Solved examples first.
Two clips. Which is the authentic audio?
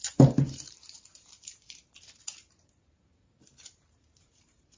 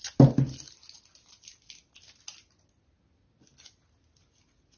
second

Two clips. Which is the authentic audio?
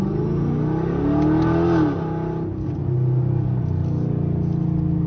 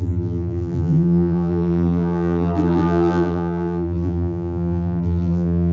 first